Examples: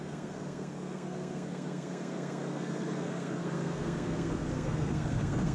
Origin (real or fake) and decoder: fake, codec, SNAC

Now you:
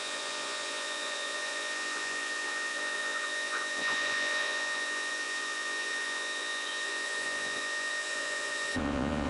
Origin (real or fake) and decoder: fake, vocoder, Vocos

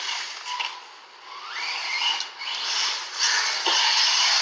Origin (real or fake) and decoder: real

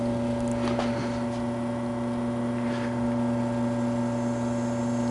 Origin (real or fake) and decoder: real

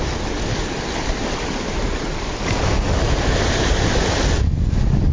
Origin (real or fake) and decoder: real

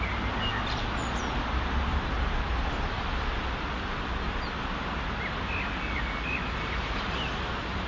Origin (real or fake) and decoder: real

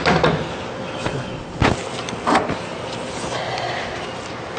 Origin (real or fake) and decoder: real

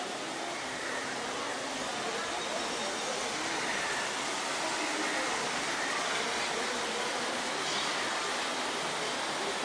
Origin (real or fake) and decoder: real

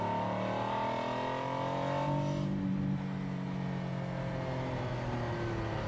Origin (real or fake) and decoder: real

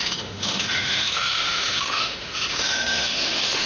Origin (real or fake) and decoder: fake, autoencoder, DAC-VAE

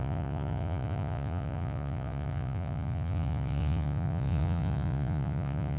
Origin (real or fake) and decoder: fake, vocoder, Vocos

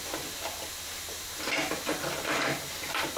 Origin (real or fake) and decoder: real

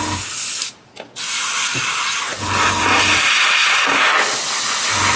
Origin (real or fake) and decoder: real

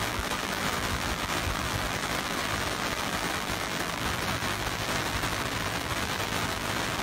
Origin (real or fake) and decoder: fake, vocoder, BigVGAN v2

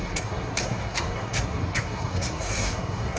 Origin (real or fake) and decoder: fake, codec, SNAC